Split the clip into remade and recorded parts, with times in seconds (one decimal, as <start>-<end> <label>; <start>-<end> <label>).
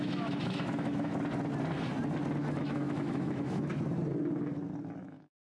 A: 0.0-1.1 remade; 1.1-2.6 recorded; 2.6-3.7 remade; 3.7-5.0 recorded; 5.0-5.6 remade